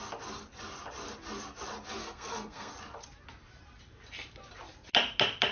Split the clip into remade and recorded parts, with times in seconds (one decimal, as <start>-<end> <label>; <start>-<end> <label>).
0.0-2.0 recorded; 2.0-2.7 remade; 2.7-5.5 recorded